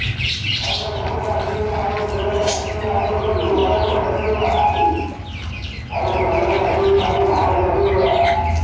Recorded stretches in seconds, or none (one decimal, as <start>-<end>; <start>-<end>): 0.0-8.6